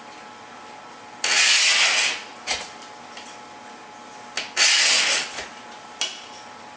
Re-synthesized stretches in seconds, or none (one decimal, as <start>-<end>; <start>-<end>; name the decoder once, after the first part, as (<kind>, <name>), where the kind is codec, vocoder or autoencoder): none